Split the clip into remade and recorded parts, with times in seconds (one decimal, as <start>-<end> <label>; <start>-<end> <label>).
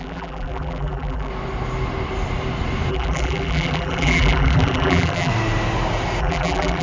0.0-1.3 remade; 1.3-2.9 recorded; 2.9-5.3 remade; 5.3-6.2 recorded; 6.2-6.8 remade